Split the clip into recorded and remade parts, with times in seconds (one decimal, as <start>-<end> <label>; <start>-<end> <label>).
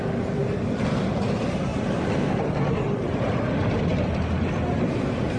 0.0-5.4 recorded